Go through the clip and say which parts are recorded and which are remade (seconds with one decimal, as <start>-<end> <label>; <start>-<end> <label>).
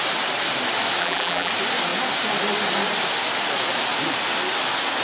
0.0-1.0 recorded; 1.0-1.5 remade; 1.5-5.0 recorded